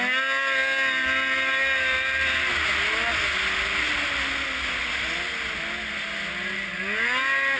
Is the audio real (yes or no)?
yes